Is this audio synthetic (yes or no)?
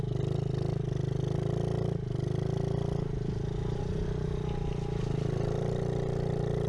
no